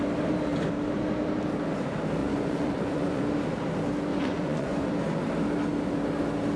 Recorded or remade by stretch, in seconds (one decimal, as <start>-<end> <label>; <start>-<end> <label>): 0.0-2.2 recorded; 2.2-3.2 remade; 3.2-4.1 recorded; 4.1-4.9 remade; 4.9-6.6 recorded